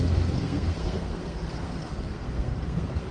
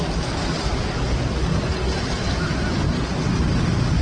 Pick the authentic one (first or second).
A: second